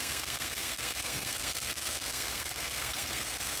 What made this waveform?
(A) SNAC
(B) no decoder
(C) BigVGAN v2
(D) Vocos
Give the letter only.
A